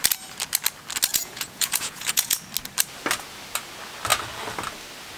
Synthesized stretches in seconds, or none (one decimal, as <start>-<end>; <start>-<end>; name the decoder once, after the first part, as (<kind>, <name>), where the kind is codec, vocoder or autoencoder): 1.1-2.4 (vocoder, Vocos)